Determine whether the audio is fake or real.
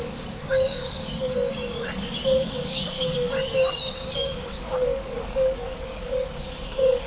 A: fake